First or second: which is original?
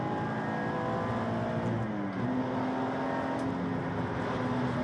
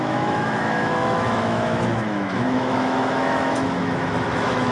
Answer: first